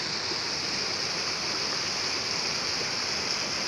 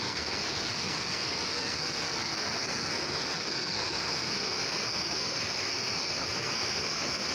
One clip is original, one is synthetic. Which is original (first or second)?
first